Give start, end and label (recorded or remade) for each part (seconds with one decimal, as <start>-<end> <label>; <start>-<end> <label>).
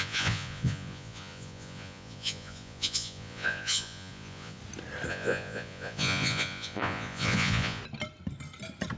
0.0-4.6 remade; 4.6-5.1 recorded; 5.1-7.8 remade; 7.8-9.0 recorded